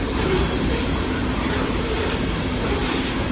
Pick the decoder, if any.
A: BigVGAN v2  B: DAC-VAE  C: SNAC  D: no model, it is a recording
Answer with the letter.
A